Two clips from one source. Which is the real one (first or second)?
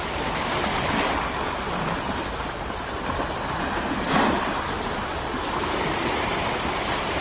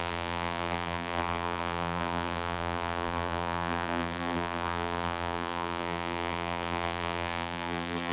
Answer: first